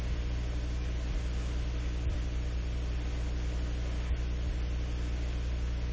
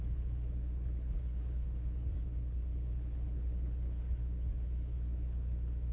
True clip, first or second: first